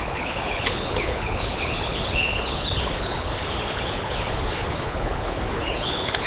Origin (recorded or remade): remade